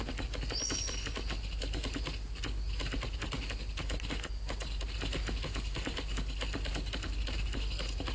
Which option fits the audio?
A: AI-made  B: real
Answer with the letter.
B